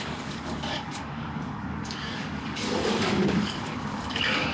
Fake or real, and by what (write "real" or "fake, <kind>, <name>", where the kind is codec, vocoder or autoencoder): fake, codec, DAC